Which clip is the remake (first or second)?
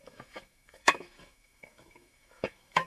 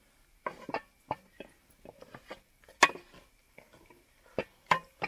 first